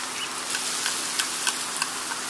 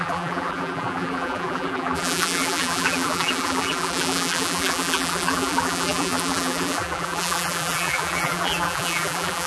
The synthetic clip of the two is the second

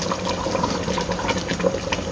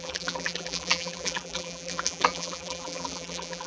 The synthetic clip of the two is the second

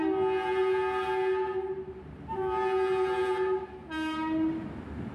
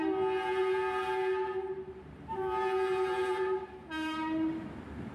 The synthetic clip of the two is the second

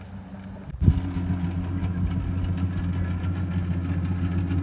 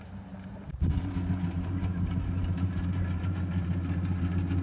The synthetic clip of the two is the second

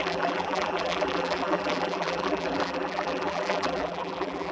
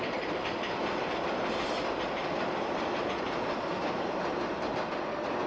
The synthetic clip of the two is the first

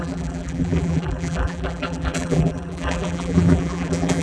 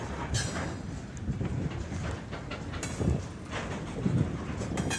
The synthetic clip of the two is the first